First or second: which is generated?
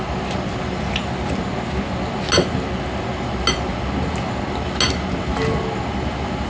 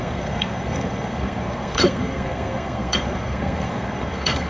second